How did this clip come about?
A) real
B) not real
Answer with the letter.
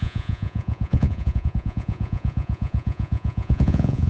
B